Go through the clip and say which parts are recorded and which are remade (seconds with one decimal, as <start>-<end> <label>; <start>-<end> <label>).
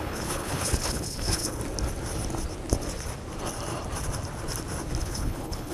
0.0-1.6 remade; 1.6-5.0 recorded; 5.0-5.7 remade